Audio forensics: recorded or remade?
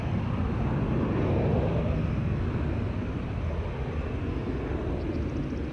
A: recorded